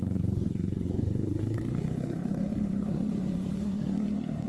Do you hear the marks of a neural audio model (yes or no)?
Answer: yes